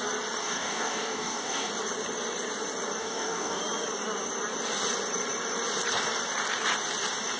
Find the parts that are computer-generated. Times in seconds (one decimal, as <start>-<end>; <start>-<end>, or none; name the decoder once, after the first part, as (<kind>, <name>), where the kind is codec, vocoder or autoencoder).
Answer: 0.4-1.7 (codec, DAC); 3.0-3.6